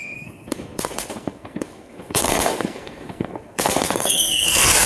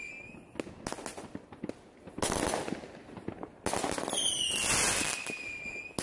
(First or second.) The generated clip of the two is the first